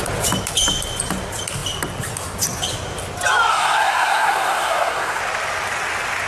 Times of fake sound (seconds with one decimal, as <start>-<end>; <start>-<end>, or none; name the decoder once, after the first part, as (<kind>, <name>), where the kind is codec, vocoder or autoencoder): 3.5-5.2 (codec, SNAC)